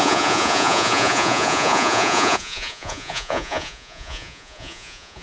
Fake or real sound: fake